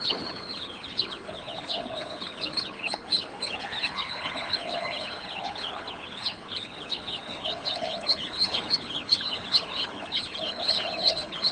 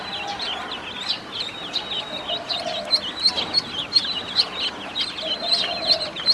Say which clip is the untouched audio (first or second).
second